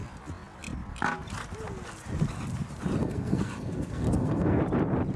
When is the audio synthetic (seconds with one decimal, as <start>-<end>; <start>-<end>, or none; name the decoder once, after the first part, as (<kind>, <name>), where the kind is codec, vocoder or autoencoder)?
3.0-4.6 (codec, SNAC)